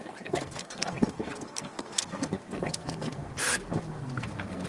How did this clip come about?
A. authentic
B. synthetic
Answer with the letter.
B